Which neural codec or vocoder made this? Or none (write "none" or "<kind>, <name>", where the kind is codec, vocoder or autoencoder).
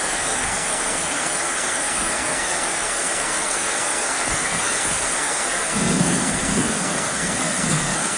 codec, SNAC